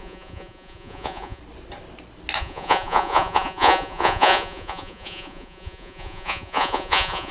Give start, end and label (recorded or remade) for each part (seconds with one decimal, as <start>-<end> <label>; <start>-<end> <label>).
0.0-1.4 remade; 1.4-2.4 recorded; 2.4-7.3 remade